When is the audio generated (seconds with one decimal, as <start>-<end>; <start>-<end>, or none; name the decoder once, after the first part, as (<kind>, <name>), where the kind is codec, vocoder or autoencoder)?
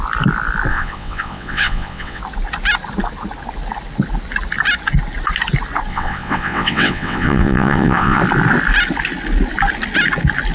0.7-2.2 (vocoder, WaveNeXt); 5.9-8.2